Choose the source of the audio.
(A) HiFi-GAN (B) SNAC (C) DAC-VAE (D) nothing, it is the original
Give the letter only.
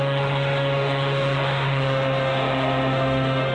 C